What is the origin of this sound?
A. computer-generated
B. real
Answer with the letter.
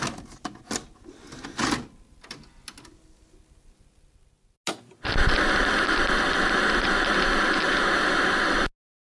B